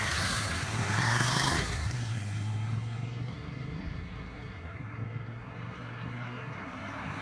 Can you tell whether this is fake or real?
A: fake